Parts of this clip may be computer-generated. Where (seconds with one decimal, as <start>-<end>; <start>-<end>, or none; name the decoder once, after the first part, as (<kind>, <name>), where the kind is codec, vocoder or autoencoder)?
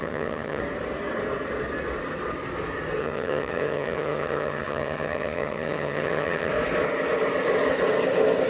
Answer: 0.0-0.6 (vocoder, HiFi-GAN); 3.0-6.5